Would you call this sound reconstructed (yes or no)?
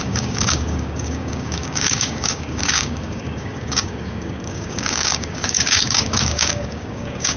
yes